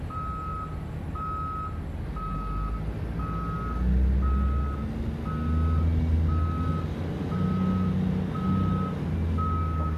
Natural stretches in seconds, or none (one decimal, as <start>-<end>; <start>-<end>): 0.0-10.0